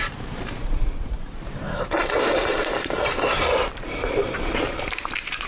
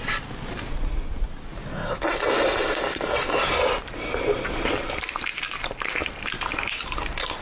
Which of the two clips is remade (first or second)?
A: first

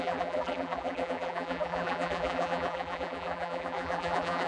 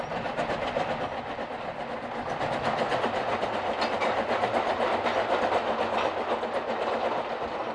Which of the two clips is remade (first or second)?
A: first